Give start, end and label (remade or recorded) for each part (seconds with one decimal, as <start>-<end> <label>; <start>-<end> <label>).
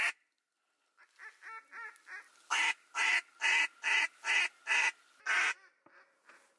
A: 0.0-6.6 recorded